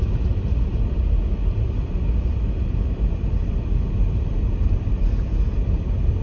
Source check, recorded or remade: recorded